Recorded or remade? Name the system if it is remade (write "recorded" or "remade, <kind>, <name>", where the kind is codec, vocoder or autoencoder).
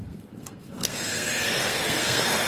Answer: remade, codec, SNAC